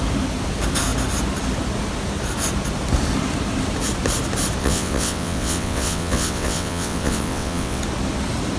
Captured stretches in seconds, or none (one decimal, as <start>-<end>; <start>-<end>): 0.0-4.6; 7.8-8.6